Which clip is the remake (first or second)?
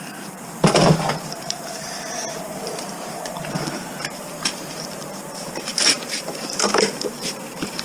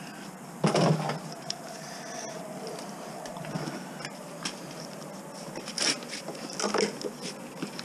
first